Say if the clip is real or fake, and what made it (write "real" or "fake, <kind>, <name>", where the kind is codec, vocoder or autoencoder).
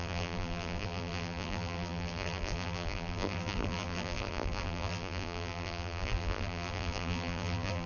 fake, vocoder, BigVGAN v2